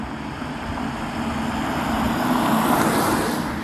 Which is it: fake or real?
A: real